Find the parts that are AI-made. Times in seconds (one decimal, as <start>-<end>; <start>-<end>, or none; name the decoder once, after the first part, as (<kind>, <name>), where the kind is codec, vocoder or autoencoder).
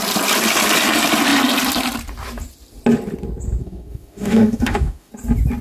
3.6-5.1 (autoencoder, DAC-VAE)